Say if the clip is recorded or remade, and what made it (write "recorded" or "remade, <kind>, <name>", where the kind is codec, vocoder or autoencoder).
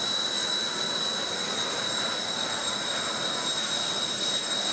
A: recorded